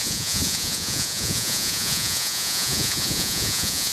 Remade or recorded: remade